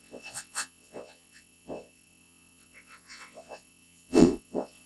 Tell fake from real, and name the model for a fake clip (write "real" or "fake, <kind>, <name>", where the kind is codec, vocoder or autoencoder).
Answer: fake, vocoder, WaveNeXt